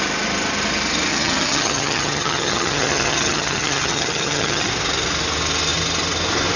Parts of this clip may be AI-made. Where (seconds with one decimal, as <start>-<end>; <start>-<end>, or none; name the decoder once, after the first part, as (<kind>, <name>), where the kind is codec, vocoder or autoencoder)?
1.1-4.7 (vocoder, HiFi-GAN)